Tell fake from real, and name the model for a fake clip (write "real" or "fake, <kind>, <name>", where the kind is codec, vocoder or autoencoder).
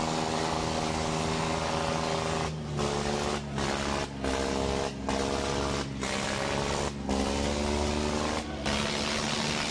real